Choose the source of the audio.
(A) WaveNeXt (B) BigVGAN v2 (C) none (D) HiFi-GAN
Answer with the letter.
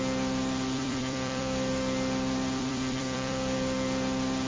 B